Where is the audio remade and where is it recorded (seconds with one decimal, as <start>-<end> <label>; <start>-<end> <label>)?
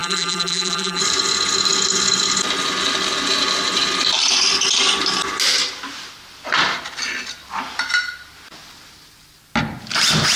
0.0-1.0 remade; 1.0-10.4 recorded